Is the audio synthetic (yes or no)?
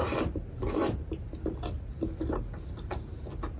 no